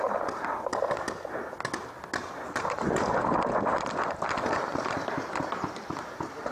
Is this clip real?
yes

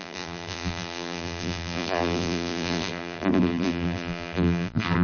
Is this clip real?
no